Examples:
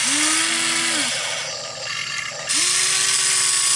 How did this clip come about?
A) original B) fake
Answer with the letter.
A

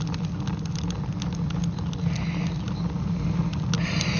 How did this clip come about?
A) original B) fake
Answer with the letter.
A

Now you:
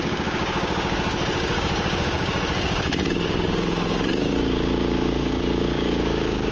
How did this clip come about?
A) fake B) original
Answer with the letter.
A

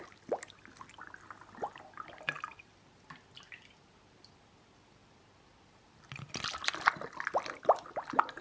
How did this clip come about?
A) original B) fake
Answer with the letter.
A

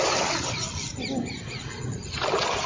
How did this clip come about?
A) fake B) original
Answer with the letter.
B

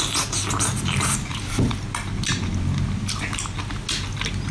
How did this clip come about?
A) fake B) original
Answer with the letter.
B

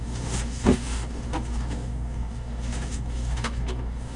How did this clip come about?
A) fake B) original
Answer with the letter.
A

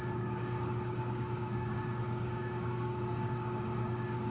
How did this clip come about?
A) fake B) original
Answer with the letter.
A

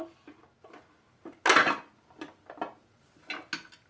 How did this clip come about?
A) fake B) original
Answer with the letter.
B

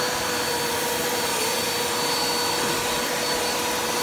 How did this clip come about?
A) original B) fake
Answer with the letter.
A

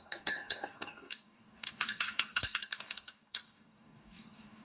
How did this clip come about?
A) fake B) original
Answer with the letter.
A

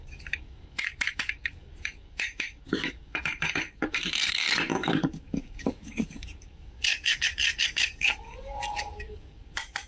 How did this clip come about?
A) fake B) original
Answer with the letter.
A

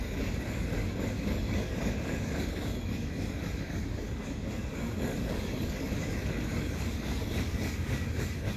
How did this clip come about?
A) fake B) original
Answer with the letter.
A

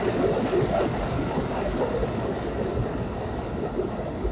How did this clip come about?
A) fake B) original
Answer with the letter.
A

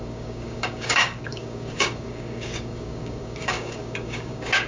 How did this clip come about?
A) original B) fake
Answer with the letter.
B